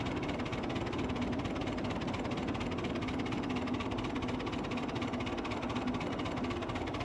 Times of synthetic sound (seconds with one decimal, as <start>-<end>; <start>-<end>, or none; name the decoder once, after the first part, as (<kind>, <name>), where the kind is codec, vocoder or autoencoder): none